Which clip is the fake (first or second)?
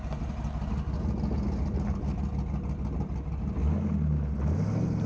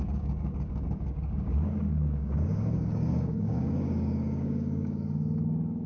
second